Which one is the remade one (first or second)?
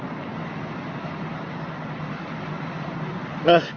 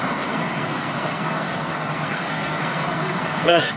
second